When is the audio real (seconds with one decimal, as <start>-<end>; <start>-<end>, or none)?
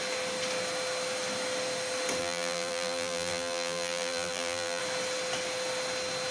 0.0-2.2; 4.8-6.3